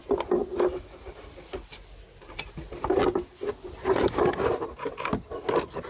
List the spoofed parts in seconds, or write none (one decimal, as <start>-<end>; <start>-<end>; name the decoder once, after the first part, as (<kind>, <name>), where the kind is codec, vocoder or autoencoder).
none